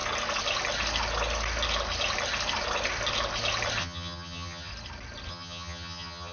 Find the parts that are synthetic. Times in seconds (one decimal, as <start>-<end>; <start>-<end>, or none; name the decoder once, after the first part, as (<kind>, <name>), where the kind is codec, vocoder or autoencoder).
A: 3.8-4.7 (vocoder, HiFi-GAN); 5.3-6.3